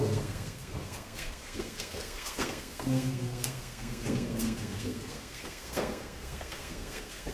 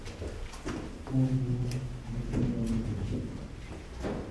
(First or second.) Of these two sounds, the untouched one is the second